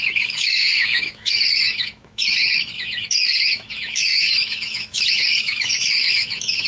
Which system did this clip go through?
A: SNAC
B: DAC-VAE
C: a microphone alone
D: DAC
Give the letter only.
B